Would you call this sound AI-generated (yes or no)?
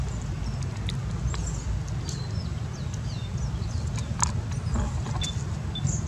no